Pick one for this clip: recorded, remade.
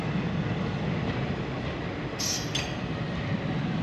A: remade